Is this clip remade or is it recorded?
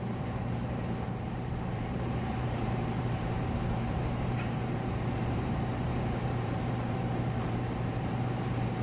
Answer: remade